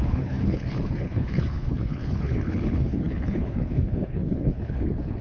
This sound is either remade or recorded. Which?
remade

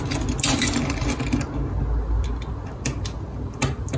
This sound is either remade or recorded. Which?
recorded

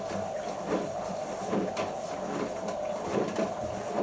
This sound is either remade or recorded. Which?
recorded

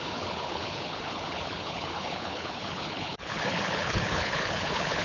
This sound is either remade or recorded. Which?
remade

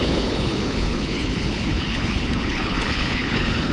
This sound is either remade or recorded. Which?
remade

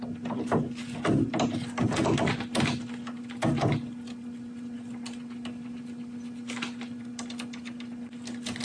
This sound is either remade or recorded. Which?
recorded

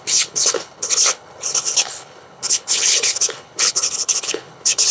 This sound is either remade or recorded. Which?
remade